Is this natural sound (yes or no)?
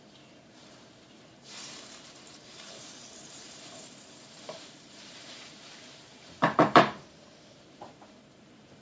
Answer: no